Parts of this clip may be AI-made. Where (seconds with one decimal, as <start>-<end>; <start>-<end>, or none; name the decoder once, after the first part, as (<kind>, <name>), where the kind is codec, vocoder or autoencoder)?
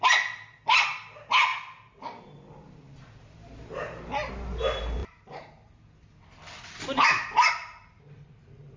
none